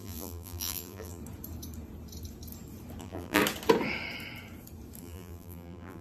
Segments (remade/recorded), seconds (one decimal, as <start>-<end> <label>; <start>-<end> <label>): 0.0-1.2 remade; 1.2-3.0 recorded; 3.0-3.4 remade; 3.4-5.0 recorded; 5.0-6.0 remade